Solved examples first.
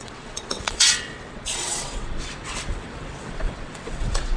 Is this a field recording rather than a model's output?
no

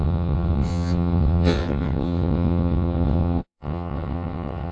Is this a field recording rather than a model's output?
no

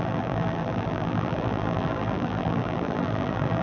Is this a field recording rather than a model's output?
no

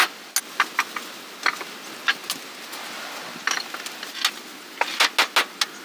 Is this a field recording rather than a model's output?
yes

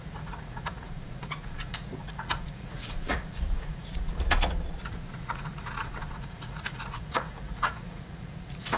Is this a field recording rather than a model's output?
no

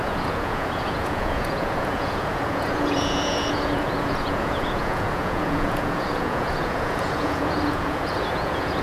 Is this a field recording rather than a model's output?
no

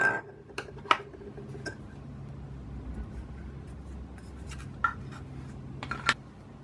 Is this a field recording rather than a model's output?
yes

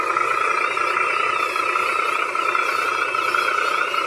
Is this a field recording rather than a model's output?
yes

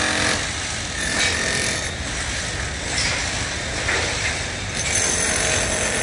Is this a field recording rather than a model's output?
yes